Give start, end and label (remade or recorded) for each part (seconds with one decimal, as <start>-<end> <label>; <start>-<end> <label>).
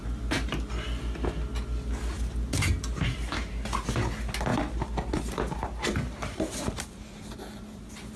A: 0.0-8.2 recorded